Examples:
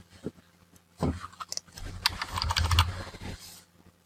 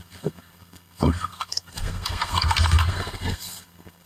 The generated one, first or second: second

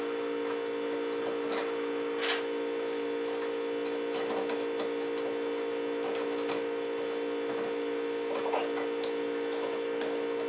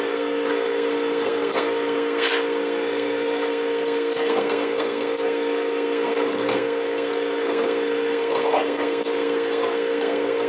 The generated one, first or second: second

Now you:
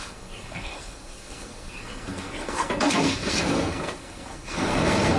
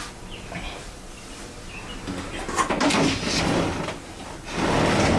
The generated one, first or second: first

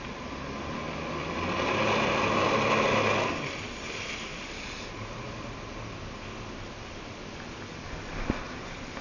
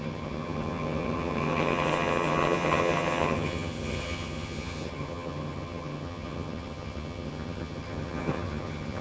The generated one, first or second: second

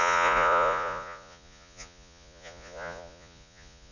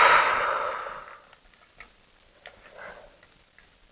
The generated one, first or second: first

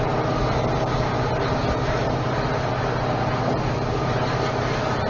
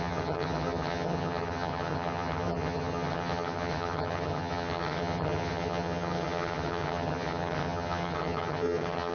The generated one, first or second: second